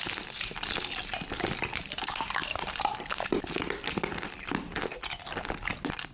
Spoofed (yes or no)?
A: no